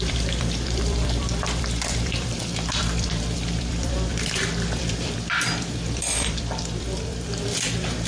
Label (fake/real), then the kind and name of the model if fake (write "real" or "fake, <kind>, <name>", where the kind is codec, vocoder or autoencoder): fake, vocoder, BigVGAN v2